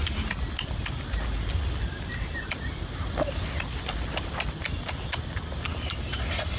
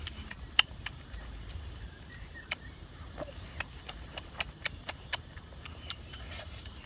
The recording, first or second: first